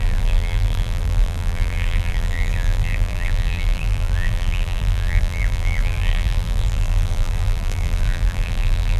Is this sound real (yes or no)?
no